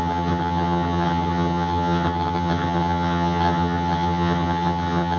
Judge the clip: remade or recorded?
remade